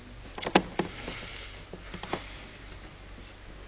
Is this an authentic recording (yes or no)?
yes